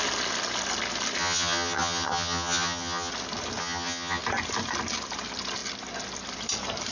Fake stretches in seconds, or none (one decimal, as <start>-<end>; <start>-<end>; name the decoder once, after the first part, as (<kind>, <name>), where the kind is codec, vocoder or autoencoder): 1.2-3.1 (vocoder, HiFi-GAN); 3.6-4.2